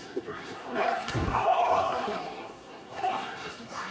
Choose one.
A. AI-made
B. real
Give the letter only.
A